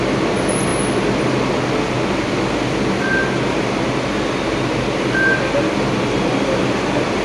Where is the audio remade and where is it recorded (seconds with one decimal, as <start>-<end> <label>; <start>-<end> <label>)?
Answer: 0.0-7.2 recorded